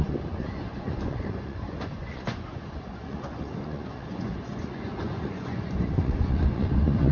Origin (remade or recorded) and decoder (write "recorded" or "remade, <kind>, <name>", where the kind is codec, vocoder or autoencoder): remade, vocoder, Vocos